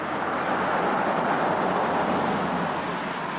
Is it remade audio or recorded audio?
recorded